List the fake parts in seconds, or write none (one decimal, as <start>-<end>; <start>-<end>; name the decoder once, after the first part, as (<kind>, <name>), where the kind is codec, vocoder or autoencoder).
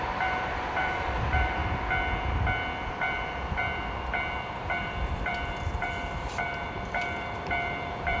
0.0-1.6 (vocoder, BigVGAN v2); 2.9-8.2